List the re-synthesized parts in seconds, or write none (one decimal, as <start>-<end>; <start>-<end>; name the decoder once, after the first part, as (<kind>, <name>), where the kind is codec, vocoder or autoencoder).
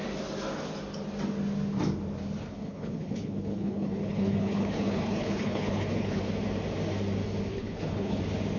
2.4-6.2 (codec, HILCodec); 7.5-8.2